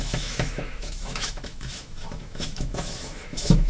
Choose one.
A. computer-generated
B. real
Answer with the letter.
A